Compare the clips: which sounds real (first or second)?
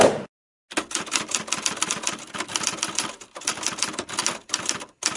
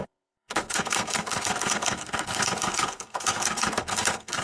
first